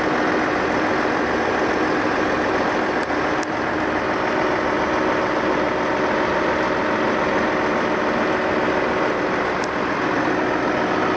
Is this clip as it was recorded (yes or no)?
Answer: yes